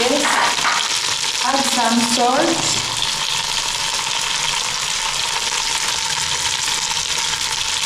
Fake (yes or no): no